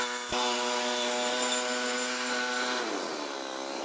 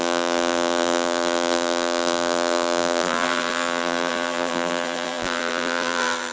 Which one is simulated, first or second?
second